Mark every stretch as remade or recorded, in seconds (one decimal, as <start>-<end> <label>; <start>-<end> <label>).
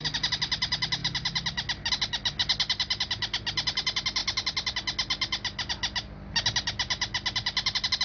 0.0-8.0 recorded